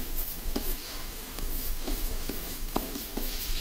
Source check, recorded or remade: remade